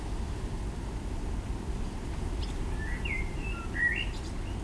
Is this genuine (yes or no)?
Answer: yes